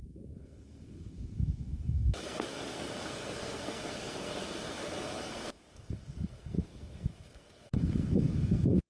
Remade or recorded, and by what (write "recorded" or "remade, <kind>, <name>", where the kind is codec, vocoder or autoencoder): remade, codec, SNAC